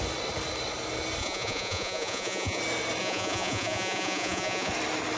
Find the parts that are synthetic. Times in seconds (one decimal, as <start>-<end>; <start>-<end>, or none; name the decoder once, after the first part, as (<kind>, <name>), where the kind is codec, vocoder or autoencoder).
1.2-2.6 (vocoder, Vocos); 3.0-4.7